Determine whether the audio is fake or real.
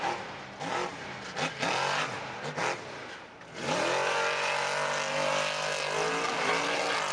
real